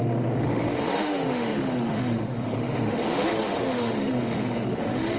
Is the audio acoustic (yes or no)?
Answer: no